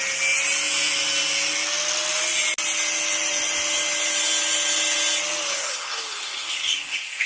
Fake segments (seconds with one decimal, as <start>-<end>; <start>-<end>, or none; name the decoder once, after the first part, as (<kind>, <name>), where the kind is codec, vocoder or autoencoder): 5.5-7.3 (codec, HILCodec)